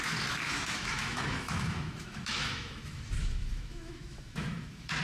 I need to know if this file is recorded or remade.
remade